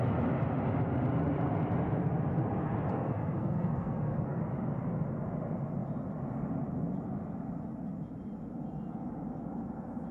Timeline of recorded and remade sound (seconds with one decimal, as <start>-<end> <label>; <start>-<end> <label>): 0.0-2.9 recorded; 2.9-4.4 remade; 4.4-10.1 recorded